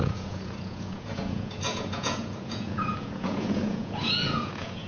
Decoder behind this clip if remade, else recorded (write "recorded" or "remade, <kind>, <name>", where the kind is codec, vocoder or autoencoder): remade, vocoder, Vocos